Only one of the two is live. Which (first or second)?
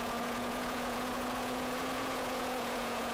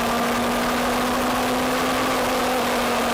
second